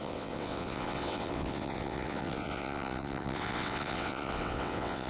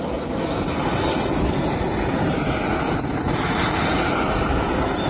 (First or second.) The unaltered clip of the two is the second